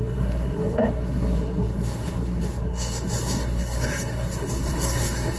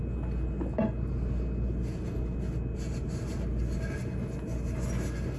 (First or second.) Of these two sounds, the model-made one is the first